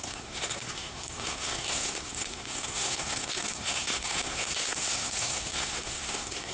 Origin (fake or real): fake